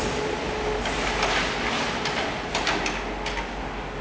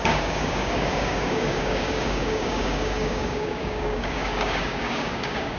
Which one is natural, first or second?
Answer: first